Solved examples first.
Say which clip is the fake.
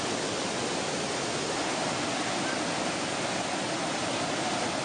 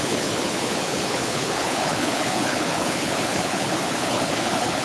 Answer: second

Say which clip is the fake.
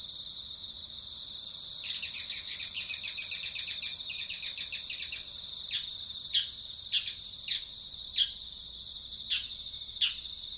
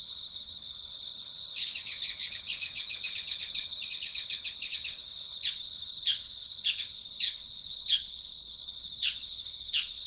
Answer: second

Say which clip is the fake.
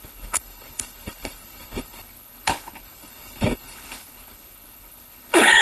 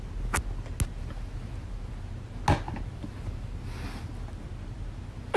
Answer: first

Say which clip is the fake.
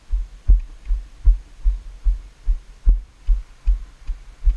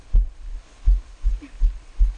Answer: second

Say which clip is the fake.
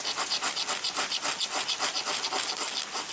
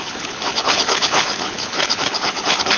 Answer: second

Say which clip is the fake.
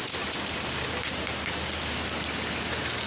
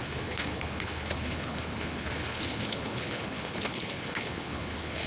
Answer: second